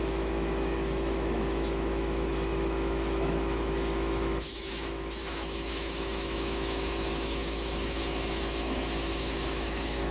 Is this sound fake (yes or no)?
yes